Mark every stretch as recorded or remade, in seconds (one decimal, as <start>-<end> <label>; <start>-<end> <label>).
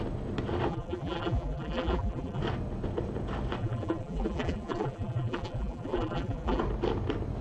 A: 0.0-0.7 recorded; 0.7-2.4 remade; 2.4-3.6 recorded; 3.6-6.6 remade; 6.6-7.4 recorded